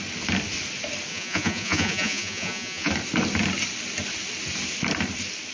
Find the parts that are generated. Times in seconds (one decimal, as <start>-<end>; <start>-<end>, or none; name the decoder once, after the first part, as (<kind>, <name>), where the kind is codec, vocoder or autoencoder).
1.1-2.9 (vocoder, Vocos)